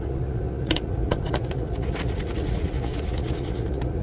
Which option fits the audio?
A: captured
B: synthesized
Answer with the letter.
B